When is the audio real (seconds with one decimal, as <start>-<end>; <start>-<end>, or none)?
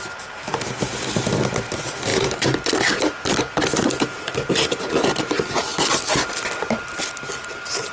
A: none